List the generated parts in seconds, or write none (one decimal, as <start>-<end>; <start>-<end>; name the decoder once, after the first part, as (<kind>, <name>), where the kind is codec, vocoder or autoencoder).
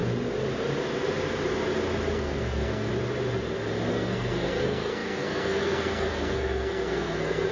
2.1-2.9 (codec, SNAC); 3.9-7.5